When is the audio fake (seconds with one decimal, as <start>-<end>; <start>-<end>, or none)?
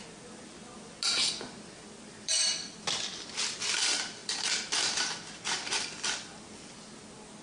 none